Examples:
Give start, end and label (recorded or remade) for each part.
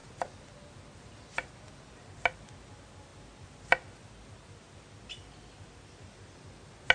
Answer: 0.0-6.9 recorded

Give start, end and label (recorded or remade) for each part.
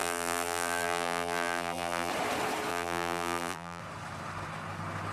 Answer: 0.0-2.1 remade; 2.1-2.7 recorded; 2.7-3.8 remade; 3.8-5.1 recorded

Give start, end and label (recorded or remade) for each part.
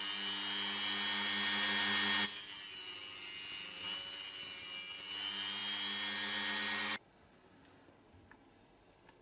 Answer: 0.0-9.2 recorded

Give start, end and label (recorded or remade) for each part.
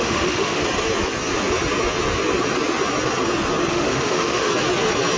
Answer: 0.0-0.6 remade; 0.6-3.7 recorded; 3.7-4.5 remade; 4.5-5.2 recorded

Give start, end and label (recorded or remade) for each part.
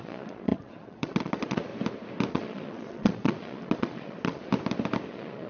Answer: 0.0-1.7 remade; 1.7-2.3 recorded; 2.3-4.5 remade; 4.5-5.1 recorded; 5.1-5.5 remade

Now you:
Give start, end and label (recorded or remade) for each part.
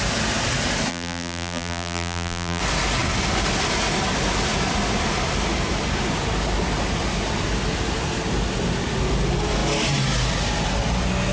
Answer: 0.0-0.9 recorded; 0.9-2.6 remade; 2.6-11.3 recorded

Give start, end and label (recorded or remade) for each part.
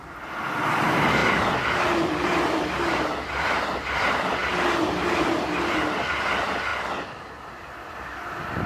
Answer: 0.0-8.7 recorded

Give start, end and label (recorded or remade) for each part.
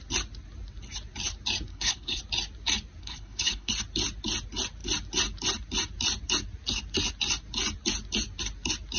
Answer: 0.0-1.7 recorded; 1.7-2.2 remade; 2.2-3.0 recorded; 3.0-3.7 remade; 3.7-9.0 recorded